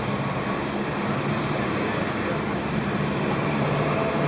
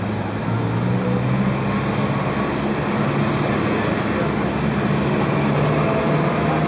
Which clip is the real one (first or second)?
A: second